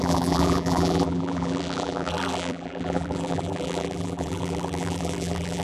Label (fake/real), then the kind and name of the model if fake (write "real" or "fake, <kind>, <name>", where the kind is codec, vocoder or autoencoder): fake, vocoder, BigVGAN v2